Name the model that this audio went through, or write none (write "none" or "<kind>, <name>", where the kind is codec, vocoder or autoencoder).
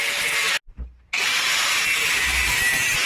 none